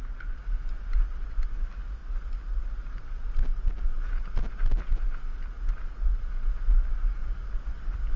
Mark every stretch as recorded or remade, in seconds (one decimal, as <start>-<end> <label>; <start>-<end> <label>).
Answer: 0.0-2.0 recorded; 2.0-2.7 remade; 2.7-7.2 recorded; 7.2-8.2 remade